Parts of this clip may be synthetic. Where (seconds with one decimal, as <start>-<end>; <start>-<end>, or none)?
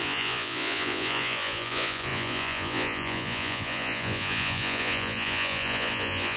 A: 0.0-6.4